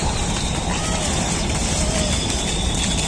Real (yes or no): yes